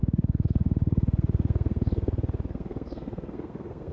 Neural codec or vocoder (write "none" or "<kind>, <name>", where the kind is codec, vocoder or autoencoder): codec, SNAC